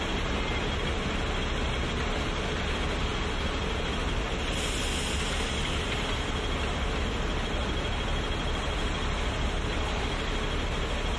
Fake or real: real